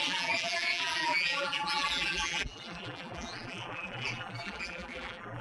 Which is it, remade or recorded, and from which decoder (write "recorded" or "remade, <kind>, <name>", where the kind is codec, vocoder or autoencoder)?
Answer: remade, vocoder, BigVGAN v2